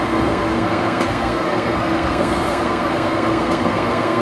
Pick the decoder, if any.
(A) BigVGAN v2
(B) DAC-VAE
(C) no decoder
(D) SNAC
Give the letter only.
D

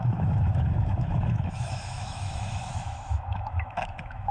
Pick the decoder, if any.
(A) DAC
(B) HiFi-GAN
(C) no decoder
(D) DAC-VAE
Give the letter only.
D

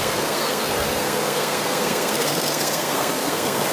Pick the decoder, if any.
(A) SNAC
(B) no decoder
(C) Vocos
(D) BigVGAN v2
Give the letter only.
A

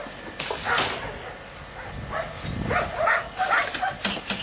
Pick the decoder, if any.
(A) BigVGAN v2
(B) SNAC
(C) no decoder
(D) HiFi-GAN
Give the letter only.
C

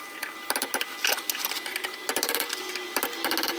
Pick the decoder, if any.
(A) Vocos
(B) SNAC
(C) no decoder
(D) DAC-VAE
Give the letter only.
C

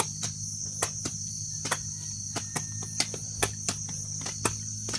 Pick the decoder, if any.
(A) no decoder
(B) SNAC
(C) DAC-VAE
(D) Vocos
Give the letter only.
A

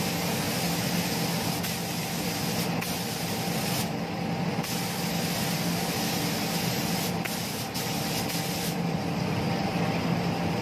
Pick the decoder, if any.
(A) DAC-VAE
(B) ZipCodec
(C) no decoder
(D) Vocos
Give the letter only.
C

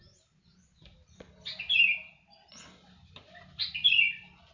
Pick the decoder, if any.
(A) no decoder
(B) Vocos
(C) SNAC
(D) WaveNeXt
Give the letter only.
A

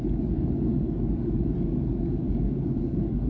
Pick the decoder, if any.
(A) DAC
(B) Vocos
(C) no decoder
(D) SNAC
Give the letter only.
A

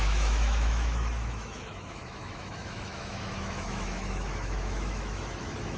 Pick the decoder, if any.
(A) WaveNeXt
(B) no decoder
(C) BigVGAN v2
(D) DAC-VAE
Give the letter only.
D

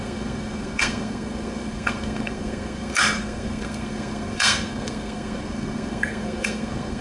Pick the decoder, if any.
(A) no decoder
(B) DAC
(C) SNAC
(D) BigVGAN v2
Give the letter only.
C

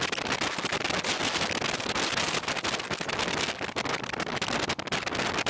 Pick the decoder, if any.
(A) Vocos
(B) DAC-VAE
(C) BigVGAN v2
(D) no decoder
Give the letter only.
D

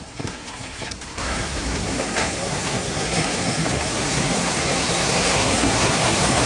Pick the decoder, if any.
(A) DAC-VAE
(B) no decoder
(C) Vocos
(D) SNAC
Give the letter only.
D